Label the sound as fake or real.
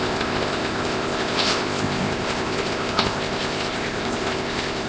fake